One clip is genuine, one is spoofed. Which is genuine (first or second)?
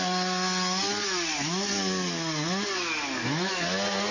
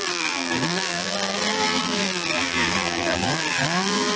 first